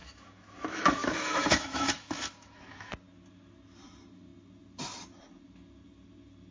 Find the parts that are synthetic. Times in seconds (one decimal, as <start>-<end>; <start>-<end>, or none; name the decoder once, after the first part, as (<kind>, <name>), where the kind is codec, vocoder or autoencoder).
0.0-2.9 (autoencoder, DAC-VAE)

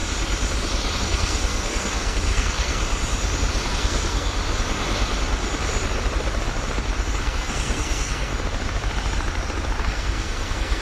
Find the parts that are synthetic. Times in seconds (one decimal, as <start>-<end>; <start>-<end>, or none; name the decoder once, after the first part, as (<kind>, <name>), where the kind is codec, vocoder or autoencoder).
1.0-2.8 (codec, SNAC); 3.7-4.4; 7.2-8.3; 9.8-10.8

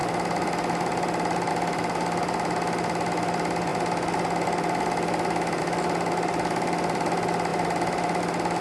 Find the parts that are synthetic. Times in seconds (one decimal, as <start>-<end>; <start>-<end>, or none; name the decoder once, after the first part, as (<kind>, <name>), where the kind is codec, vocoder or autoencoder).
none

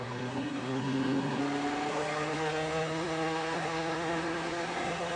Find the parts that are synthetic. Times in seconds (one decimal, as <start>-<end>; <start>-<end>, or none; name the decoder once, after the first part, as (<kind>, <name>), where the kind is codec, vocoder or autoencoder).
0.0-1.4 (codec, SNAC); 1.9-5.2

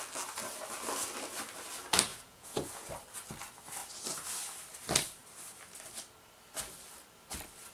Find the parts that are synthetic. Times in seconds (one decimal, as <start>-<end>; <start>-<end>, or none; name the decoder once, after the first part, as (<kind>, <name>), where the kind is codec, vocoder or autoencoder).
2.1-2.9 (vocoder, Vocos)

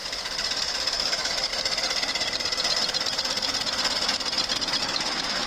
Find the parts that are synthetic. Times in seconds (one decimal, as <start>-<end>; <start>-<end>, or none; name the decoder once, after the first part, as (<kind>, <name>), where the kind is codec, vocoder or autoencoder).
0.6-1.5 (autoencoder, DAC-VAE); 4.8-5.5